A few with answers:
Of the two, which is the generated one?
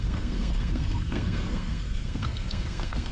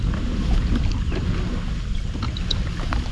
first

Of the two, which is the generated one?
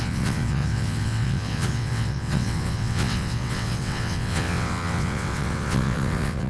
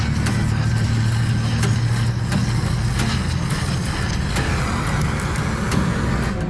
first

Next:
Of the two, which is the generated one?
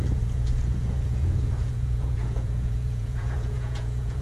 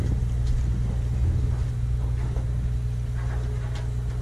first